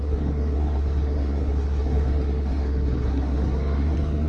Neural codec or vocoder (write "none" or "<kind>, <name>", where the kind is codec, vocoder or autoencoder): codec, SNAC